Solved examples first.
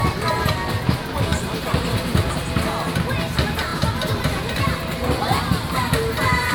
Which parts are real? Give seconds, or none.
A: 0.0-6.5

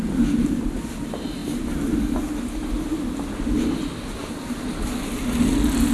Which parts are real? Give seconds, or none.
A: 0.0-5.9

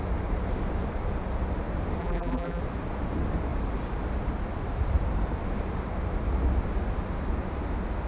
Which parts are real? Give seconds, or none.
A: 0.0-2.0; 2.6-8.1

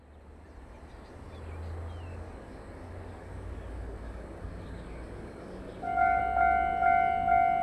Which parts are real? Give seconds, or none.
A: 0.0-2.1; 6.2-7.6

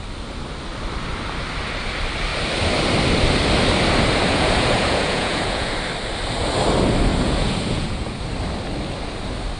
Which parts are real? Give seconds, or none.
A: 0.0-4.3; 5.7-7.1; 8.2-9.6

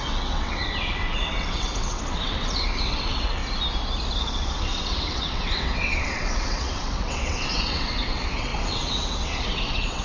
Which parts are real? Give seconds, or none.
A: 3.4-4.2

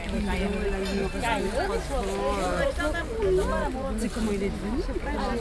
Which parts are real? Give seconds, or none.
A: 0.0-3.0; 3.6-5.4

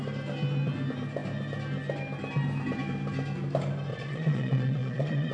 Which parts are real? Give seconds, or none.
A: 0.0-3.9